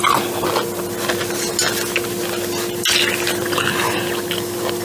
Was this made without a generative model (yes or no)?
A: yes